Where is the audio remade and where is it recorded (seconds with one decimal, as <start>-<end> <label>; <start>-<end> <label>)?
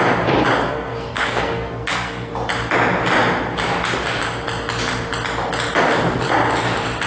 0.0-0.6 recorded; 0.6-2.3 remade; 2.3-7.1 recorded